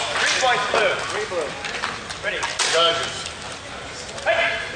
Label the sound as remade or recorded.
recorded